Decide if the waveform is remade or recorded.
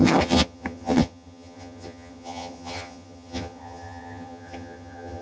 remade